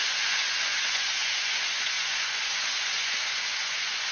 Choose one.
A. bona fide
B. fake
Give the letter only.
B